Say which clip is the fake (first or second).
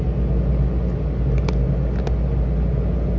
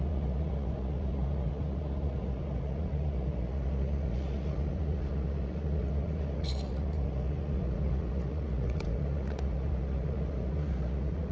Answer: second